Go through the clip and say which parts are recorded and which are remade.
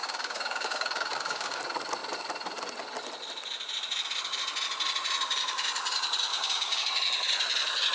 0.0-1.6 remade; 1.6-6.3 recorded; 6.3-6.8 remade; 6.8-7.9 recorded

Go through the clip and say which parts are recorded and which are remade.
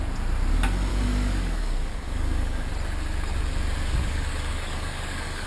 0.0-0.9 recorded; 0.9-2.7 remade; 2.7-4.0 recorded; 4.0-5.5 remade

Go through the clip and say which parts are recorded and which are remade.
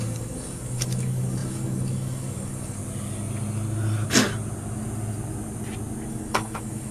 0.0-2.8 remade; 2.8-6.1 recorded; 6.1-6.9 remade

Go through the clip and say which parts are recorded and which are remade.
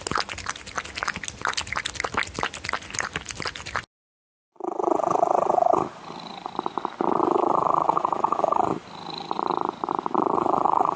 0.0-11.0 recorded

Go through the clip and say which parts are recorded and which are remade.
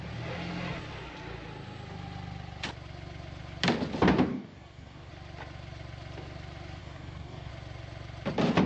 0.0-4.3 recorded; 4.3-5.1 remade; 5.1-6.8 recorded; 6.8-7.5 remade; 7.5-8.7 recorded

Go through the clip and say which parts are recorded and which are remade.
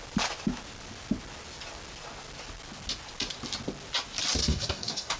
0.0-4.4 recorded; 4.4-5.2 remade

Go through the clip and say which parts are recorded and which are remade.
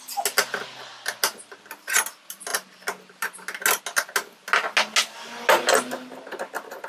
0.0-6.9 recorded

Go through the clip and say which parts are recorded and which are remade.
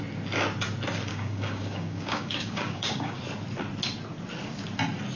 0.0-1.1 recorded; 1.1-3.2 remade; 3.2-5.2 recorded